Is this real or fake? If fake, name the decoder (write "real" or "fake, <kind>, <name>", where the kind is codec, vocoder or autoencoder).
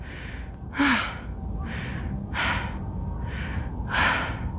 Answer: real